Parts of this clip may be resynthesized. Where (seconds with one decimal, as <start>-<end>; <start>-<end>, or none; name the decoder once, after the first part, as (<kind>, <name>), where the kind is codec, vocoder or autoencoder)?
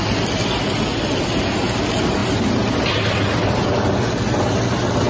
2.2-2.7 (vocoder, BigVGAN v2)